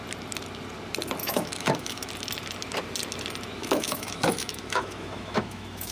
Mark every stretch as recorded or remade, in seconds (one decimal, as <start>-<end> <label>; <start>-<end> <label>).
0.0-1.2 recorded; 1.2-2.1 remade; 2.1-3.6 recorded; 3.6-5.9 remade